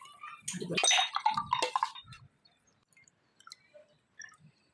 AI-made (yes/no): no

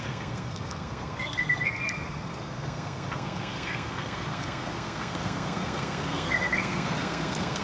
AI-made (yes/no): yes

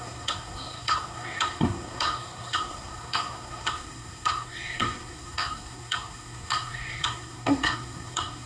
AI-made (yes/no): yes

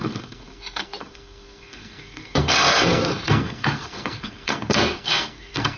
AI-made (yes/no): yes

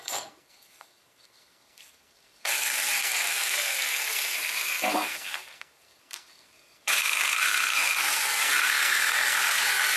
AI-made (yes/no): yes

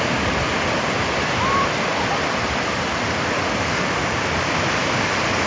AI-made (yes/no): no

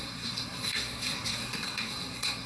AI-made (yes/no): yes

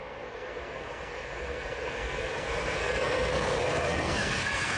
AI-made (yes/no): yes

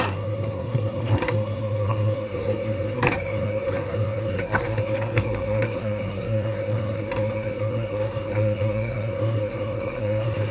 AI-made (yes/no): yes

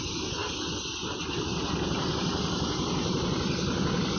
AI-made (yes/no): no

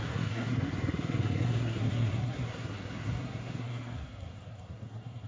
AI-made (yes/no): yes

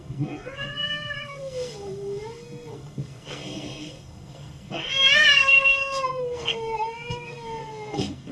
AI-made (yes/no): yes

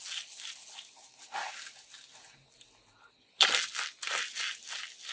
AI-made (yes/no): no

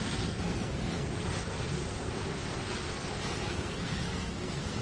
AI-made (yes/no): yes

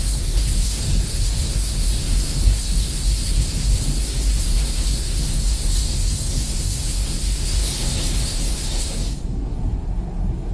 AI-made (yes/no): yes